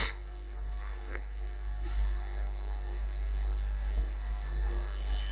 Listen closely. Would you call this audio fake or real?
fake